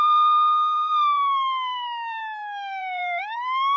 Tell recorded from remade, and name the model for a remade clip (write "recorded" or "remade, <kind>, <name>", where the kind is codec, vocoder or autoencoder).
remade, vocoder, BigVGAN v2